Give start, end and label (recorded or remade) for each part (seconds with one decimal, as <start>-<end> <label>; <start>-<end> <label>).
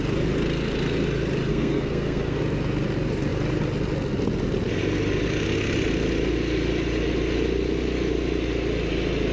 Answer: 0.0-1.5 recorded; 1.5-2.4 remade; 2.4-9.3 recorded